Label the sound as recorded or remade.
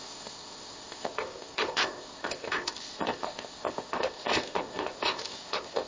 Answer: remade